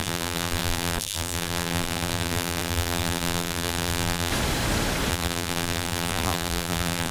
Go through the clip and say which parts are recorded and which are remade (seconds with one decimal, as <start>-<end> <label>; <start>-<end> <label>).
0.0-4.3 remade; 4.3-5.1 recorded; 5.1-7.1 remade

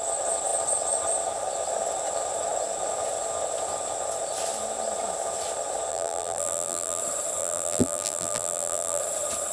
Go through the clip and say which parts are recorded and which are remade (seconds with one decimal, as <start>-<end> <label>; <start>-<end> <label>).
0.0-5.9 recorded; 5.9-7.0 remade; 7.0-7.4 recorded; 7.4-9.0 remade; 9.0-9.5 recorded

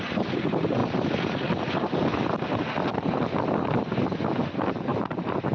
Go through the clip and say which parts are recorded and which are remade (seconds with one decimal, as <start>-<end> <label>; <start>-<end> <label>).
0.0-4.9 recorded; 4.9-5.5 remade

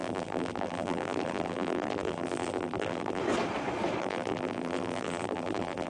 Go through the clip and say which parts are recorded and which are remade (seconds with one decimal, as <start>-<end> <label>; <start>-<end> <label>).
0.0-3.2 remade; 3.2-4.0 recorded; 4.0-5.9 remade

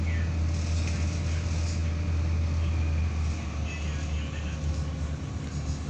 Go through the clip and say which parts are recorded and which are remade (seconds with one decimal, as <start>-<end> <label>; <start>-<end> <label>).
0.0-5.9 recorded

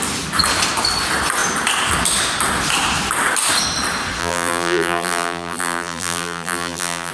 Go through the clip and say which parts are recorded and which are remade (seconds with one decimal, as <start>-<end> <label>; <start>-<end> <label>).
0.0-4.2 recorded; 4.2-7.1 remade

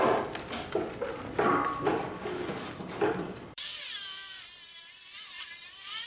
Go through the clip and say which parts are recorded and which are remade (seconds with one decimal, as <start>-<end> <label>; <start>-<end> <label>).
0.0-1.9 recorded; 1.9-4.0 remade; 4.0-5.1 recorded; 5.1-6.1 remade